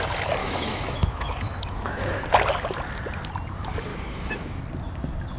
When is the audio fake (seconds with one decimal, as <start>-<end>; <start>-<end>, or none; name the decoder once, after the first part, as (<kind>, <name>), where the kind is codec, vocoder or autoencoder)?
0.4-2.2 (autoencoder, DAC-VAE); 3.9-4.6